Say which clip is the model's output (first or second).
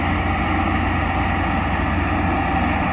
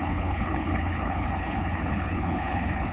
second